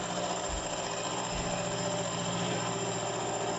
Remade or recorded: recorded